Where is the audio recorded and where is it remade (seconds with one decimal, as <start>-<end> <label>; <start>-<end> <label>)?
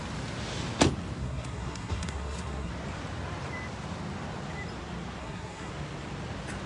0.0-1.2 recorded; 1.2-2.7 remade; 2.7-5.2 recorded; 5.2-5.7 remade; 5.7-6.7 recorded